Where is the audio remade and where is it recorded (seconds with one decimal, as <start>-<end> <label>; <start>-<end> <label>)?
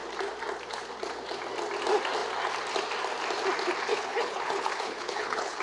0.0-3.9 recorded; 3.9-5.6 remade